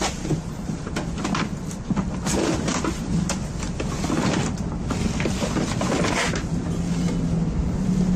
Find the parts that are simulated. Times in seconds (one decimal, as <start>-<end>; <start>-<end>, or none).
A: none